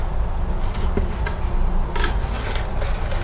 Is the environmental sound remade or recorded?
recorded